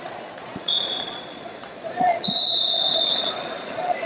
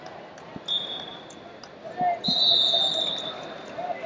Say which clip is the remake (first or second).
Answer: first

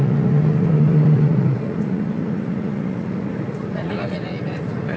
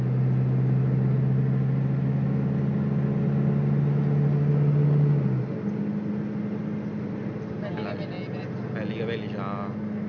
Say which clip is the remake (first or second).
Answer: first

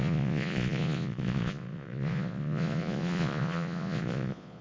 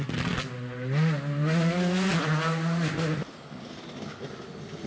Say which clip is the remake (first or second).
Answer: first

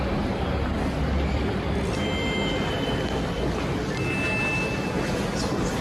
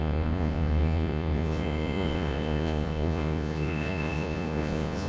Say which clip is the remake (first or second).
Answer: second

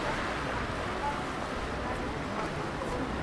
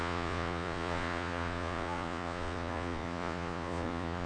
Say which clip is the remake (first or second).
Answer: second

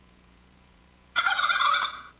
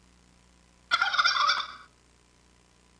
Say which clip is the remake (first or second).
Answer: first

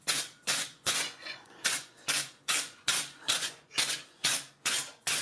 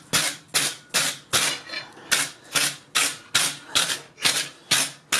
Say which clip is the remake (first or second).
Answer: first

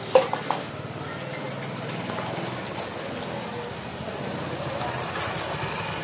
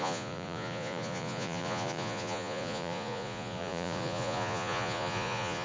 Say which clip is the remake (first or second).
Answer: second